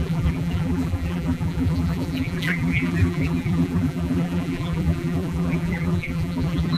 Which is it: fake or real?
fake